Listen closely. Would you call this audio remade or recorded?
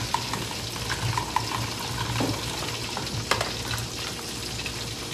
recorded